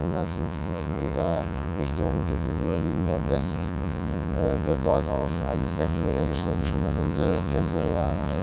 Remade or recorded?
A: remade